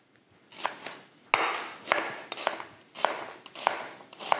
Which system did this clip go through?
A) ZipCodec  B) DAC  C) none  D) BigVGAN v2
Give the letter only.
C